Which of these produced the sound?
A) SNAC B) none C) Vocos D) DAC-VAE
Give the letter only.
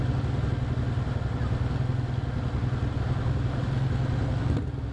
B